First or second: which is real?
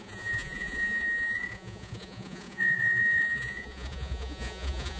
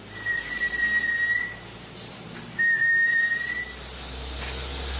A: second